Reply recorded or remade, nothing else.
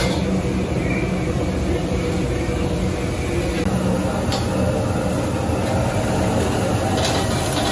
recorded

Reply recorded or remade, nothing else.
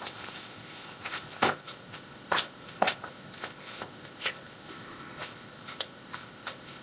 remade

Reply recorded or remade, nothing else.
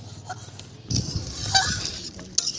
recorded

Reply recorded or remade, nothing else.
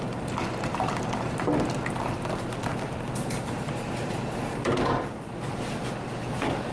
recorded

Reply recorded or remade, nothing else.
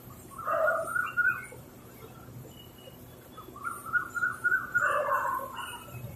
recorded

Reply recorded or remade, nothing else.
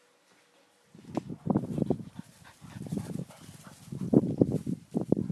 recorded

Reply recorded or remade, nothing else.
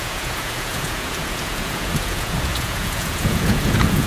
remade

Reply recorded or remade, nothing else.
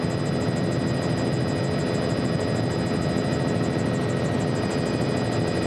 recorded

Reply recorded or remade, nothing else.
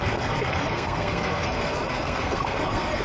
remade